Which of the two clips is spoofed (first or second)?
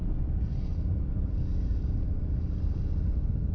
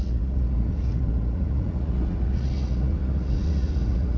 second